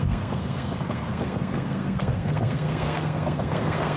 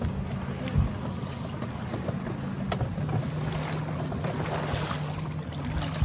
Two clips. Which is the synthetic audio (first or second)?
first